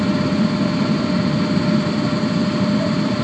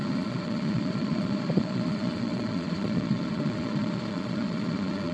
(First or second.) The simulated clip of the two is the second